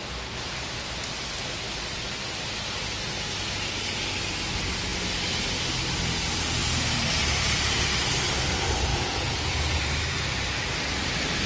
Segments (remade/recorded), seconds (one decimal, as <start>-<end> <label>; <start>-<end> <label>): 0.0-8.9 recorded; 8.9-9.8 remade; 9.8-11.5 recorded